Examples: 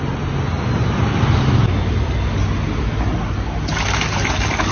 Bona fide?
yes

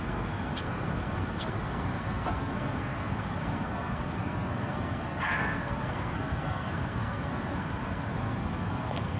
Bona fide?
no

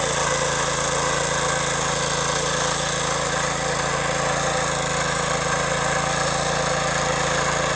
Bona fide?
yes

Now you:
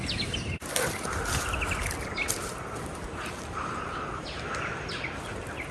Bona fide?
yes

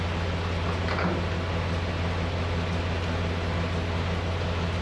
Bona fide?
yes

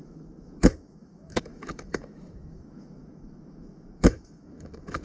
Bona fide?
no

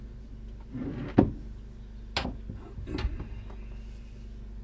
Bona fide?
yes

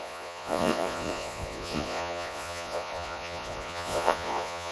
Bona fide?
no